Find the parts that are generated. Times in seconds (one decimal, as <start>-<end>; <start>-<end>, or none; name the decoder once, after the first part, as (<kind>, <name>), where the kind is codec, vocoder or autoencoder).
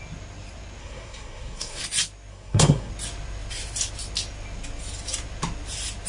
0.8-1.8 (codec, SNAC); 2.3-2.9